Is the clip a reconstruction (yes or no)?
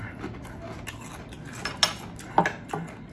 no